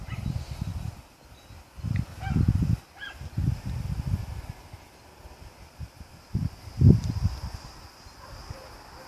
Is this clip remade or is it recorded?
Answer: recorded